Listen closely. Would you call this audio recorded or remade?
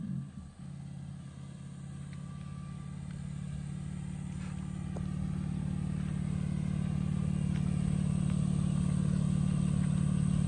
recorded